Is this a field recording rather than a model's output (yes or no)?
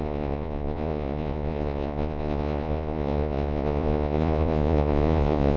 no